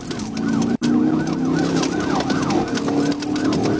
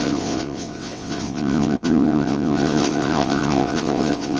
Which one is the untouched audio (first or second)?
first